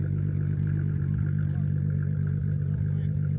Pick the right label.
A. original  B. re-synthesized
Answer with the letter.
A